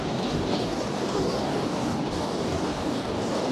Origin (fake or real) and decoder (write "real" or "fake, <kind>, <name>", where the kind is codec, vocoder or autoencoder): fake, codec, DAC